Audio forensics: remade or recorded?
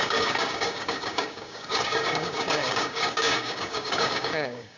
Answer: remade